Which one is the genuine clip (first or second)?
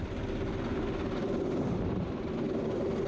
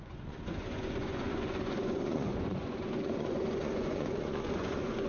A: first